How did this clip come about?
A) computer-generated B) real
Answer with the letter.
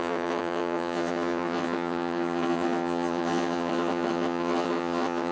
A